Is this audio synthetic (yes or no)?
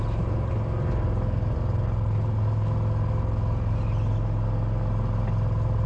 no